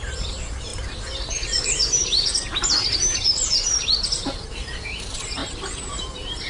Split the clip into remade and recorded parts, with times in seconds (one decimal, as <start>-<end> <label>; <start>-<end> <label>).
0.0-5.4 remade; 5.4-5.9 recorded; 5.9-6.5 remade